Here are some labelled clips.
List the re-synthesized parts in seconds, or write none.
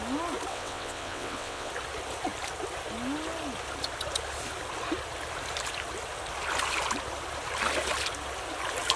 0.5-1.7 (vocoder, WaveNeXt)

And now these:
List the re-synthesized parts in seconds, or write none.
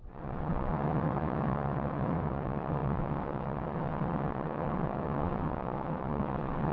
0.0-6.7 (vocoder, WaveNeXt)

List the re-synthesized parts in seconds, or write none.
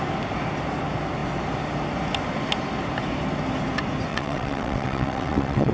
4.1-5.7 (vocoder, WaveNeXt)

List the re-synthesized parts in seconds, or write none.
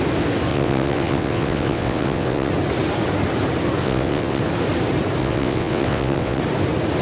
0.5-2.5 (vocoder, WaveNeXt); 3.8-4.4; 5.2-6.4